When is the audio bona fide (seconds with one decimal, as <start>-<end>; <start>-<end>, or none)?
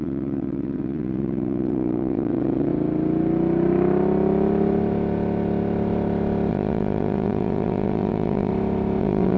2.7-6.5; 8.5-9.0